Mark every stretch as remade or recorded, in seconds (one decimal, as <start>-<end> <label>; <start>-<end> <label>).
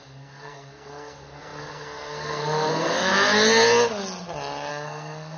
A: 0.0-3.1 remade; 3.1-4.7 recorded; 4.7-5.4 remade